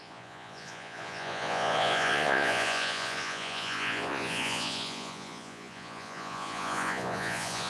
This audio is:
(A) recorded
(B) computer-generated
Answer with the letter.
B